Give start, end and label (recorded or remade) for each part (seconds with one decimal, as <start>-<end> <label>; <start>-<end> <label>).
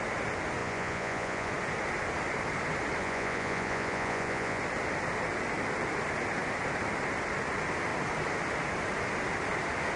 0.0-0.6 recorded; 0.6-1.5 remade; 1.5-3.0 recorded; 3.0-4.6 remade; 4.6-10.0 recorded